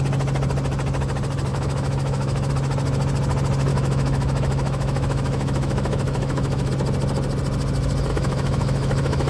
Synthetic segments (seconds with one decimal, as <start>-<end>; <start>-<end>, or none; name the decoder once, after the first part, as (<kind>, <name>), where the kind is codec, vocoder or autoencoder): 1.5-2.5 (autoencoder, DAC-VAE); 3.7-6.7; 8.1-9.3